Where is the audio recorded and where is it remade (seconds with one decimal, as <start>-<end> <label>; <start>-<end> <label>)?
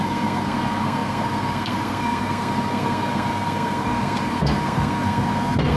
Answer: 0.0-5.8 remade